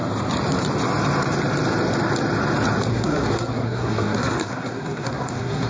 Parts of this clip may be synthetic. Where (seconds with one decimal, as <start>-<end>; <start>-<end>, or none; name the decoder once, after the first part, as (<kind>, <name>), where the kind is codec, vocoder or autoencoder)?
2.9-5.7 (codec, SNAC)